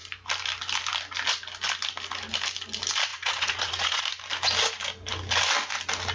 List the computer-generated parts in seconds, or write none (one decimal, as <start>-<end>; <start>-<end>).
3.1-4.0